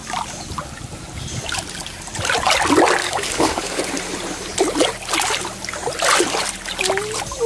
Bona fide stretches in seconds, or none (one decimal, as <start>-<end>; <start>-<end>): 0.0-3.0; 3.8-7.5